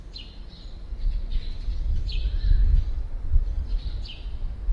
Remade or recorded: remade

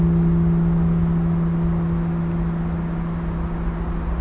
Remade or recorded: recorded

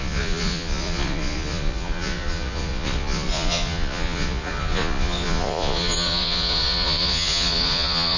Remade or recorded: remade